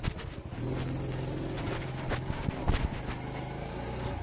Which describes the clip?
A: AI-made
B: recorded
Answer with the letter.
B